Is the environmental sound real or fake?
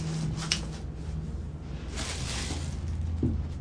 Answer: real